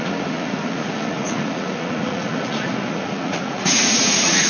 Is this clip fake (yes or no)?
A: yes